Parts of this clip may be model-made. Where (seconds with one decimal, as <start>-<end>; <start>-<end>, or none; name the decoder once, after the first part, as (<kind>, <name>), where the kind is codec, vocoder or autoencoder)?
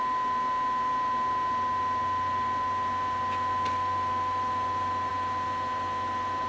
none